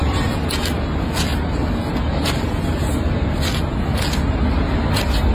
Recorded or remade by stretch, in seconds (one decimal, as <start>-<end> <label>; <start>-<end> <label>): 0.0-5.3 recorded